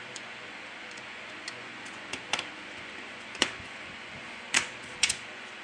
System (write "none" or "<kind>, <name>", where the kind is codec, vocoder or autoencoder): vocoder, Vocos